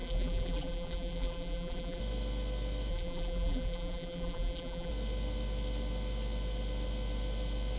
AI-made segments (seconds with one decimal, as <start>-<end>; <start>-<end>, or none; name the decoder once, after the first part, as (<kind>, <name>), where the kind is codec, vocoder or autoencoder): 0.0-2.0 (vocoder, BigVGAN v2); 2.9-4.9